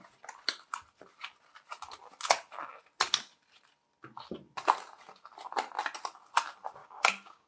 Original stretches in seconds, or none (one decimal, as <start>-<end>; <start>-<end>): 0.0-6.8